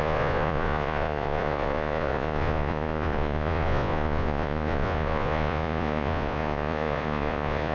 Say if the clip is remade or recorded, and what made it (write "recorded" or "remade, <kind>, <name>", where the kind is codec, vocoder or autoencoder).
remade, vocoder, Vocos